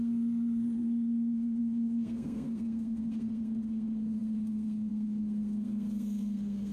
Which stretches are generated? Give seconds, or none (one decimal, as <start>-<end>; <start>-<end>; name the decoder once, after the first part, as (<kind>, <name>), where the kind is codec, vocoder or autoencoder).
0.0-6.7 (codec, SNAC)